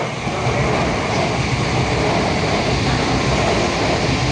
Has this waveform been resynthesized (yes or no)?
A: no